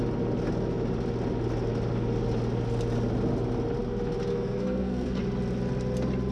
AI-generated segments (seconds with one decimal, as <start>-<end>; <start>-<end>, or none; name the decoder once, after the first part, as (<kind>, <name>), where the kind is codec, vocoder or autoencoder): 4.3-5.2 (codec, SNAC)